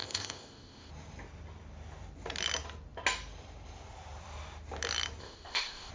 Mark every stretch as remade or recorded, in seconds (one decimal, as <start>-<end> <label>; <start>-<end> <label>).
0.0-0.9 remade; 0.9-5.2 recorded; 5.2-5.9 remade